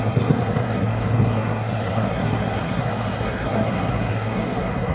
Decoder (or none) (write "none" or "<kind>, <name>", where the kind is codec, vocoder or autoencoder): codec, SNAC